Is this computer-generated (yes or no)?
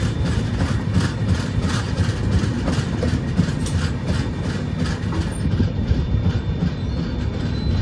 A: no